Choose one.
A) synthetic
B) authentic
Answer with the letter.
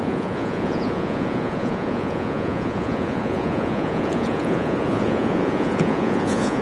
A